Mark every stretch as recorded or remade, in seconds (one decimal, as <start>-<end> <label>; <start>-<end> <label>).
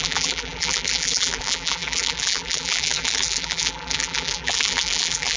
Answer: 0.0-5.4 remade